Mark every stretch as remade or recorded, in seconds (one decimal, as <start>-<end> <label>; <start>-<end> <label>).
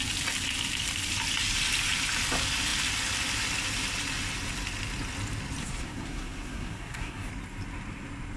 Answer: 0.0-5.6 recorded; 5.6-7.3 remade; 7.3-8.4 recorded